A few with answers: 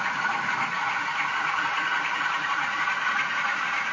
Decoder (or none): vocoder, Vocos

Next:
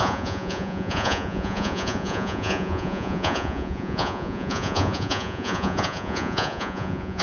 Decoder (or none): vocoder, Vocos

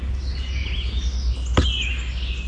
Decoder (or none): none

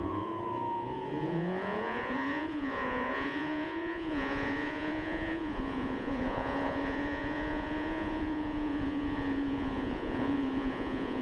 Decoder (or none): vocoder, Vocos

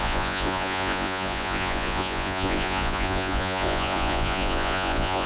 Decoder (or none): vocoder, Vocos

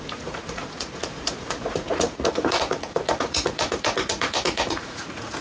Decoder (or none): vocoder, Vocos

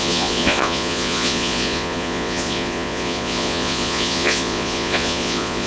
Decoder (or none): vocoder, Vocos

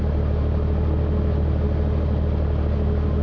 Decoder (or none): none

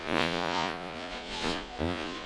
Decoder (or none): vocoder, Vocos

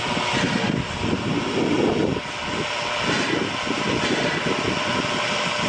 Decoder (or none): none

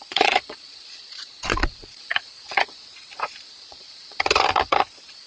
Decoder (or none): vocoder, Vocos